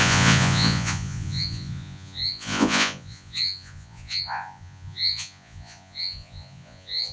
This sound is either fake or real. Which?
fake